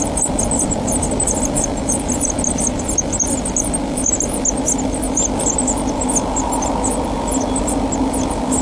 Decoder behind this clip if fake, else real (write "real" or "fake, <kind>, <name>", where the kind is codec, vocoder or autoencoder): real